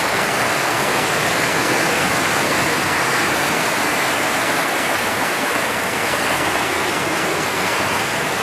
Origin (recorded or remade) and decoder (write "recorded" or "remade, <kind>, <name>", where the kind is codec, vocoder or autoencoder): remade, codec, SNAC